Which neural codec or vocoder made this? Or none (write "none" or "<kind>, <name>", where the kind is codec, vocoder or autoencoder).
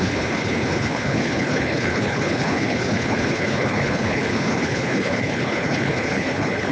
codec, HILCodec